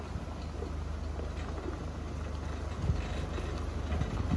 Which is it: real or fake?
real